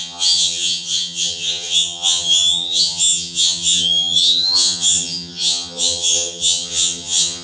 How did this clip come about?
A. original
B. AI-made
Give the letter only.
B